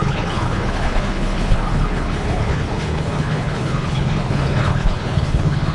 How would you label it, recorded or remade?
remade